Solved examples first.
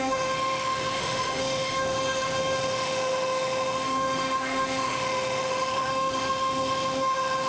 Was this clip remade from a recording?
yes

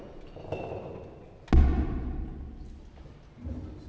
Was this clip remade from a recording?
no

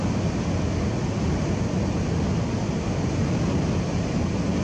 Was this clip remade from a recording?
no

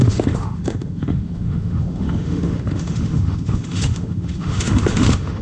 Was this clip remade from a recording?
yes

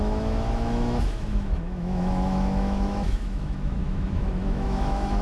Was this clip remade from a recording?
yes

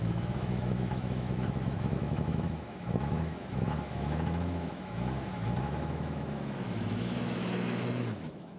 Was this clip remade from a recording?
yes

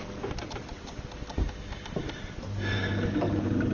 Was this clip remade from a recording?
no